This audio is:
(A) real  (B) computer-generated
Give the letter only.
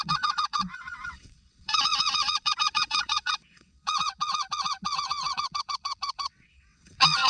B